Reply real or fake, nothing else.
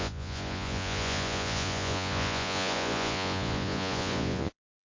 fake